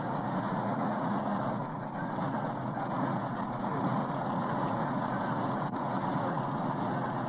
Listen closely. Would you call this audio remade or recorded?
remade